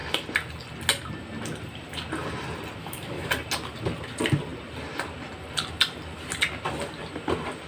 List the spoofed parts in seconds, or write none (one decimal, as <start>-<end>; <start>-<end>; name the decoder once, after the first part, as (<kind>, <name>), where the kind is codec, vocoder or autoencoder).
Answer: 2.8-3.3 (autoencoder, DAC-VAE)